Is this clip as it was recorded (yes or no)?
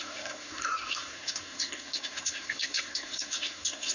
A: no